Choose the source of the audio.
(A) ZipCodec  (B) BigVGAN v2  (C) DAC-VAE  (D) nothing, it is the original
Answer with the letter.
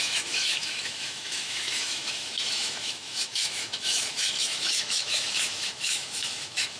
C